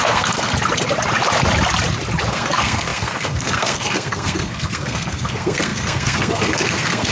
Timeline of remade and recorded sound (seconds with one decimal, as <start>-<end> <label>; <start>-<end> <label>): 0.0-0.5 remade; 0.5-2.3 recorded; 2.3-7.1 remade